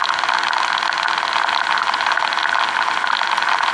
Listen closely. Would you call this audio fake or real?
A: real